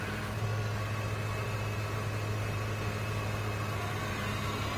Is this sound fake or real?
real